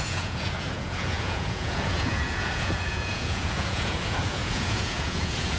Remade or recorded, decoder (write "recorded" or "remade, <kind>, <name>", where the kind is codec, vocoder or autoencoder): remade, vocoder, Vocos